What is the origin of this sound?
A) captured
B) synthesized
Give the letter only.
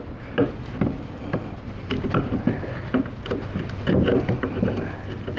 A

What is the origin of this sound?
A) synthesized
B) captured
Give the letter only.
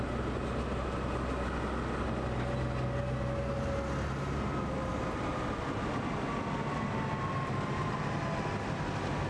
B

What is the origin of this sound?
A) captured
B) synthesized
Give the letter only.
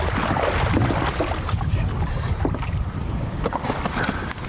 A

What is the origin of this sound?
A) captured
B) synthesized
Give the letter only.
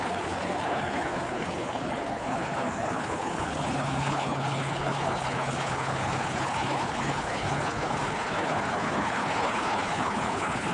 B